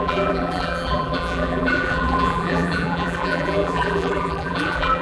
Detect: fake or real fake